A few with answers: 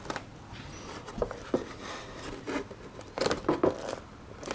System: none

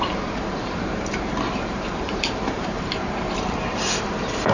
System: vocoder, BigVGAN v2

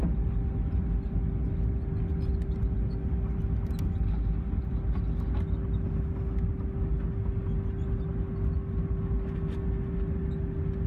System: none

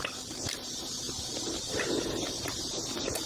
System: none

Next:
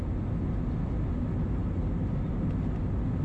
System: none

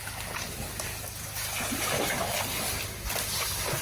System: none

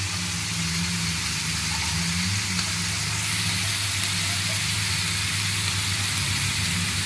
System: none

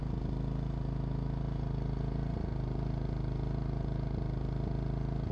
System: none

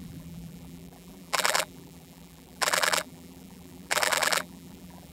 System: vocoder, BigVGAN v2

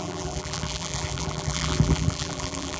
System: vocoder, BigVGAN v2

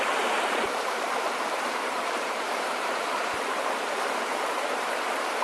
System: vocoder, BigVGAN v2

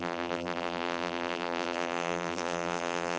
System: vocoder, BigVGAN v2